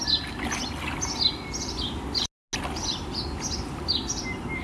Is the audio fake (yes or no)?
no